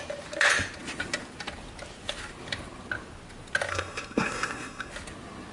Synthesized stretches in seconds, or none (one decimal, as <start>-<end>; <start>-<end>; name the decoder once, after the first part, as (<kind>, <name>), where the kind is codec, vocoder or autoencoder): 3.7-4.9 (codec, SNAC)